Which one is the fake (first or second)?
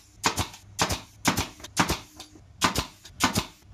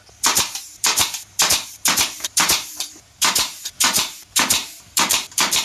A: second